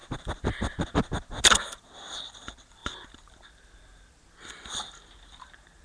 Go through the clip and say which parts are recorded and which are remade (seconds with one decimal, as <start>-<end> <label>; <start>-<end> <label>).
0.0-5.8 recorded